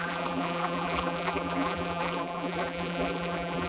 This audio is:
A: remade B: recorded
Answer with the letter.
A